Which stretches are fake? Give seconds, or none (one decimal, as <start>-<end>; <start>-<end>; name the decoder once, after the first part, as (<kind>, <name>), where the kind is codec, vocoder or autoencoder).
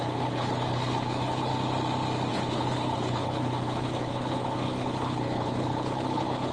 0.0-1.5 (codec, HILCodec); 2.3-6.5